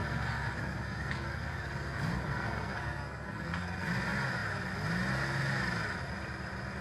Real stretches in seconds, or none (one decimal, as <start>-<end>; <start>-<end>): 3.9-6.8